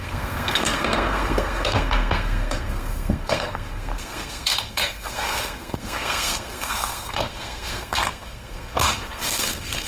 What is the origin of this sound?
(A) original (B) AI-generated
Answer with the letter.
B